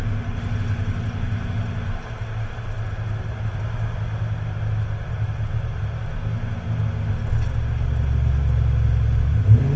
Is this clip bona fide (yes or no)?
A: yes